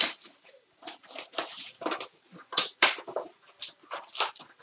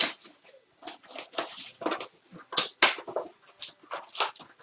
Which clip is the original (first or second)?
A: second